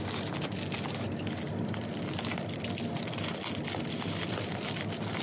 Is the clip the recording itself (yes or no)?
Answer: yes